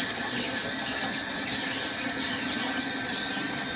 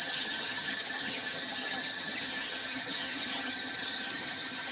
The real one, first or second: first